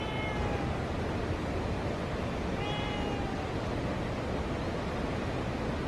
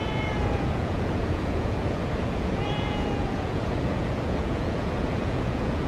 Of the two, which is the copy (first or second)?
second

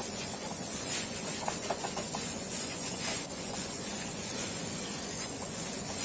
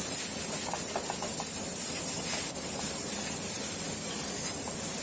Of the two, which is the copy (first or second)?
first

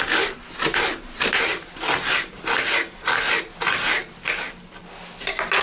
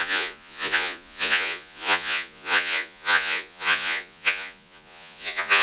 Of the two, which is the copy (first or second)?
second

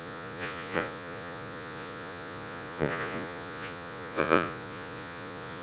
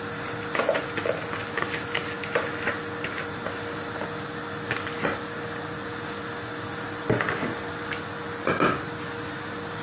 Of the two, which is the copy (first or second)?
first